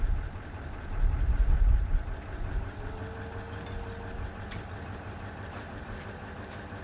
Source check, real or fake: real